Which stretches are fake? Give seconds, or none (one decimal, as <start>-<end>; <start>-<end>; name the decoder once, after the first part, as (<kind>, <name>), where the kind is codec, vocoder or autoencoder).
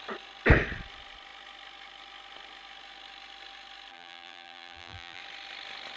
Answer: 3.9-5.2 (vocoder, BigVGAN v2)